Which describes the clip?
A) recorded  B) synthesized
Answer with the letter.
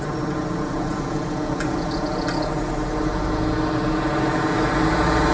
A